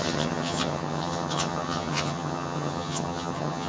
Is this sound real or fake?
fake